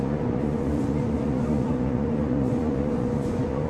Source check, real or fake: fake